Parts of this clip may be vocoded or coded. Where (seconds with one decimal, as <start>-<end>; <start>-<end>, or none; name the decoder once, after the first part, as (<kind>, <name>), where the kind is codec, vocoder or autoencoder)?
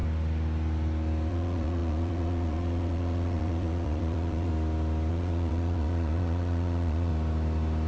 1.3-4.5 (vocoder, Vocos); 5.1-7.1